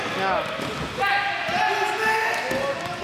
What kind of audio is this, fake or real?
real